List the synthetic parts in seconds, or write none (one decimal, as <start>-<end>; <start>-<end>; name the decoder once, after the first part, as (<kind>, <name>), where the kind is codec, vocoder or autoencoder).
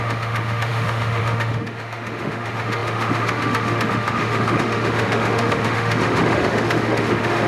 0.0-7.5 (autoencoder, DAC-VAE)